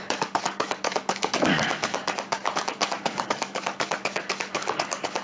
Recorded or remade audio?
remade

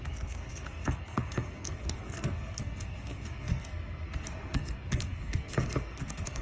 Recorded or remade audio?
remade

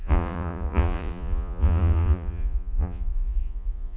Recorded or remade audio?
remade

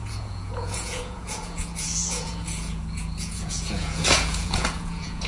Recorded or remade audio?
remade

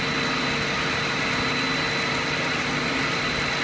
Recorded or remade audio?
recorded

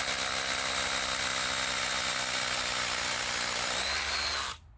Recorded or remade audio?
recorded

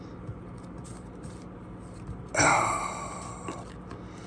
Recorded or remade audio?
recorded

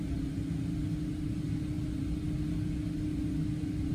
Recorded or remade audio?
recorded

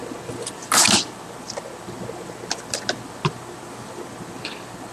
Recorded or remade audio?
recorded